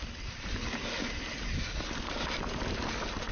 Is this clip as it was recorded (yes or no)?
yes